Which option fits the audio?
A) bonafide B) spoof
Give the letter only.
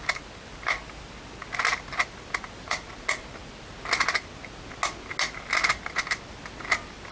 A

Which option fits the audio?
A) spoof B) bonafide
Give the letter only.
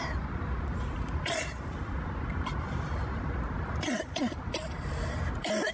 B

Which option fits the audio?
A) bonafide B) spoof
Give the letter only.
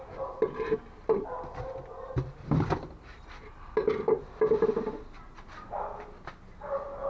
A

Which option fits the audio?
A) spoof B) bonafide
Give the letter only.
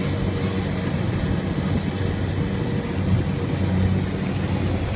B